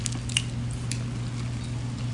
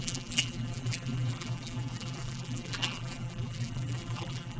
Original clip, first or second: first